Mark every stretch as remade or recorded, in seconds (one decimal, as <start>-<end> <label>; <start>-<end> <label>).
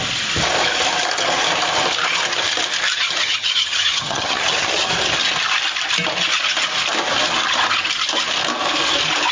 0.0-3.2 recorded; 3.2-4.9 remade; 4.9-9.3 recorded